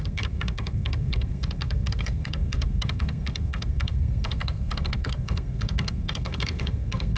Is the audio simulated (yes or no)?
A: yes